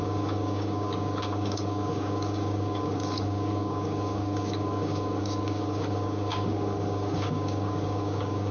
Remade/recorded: remade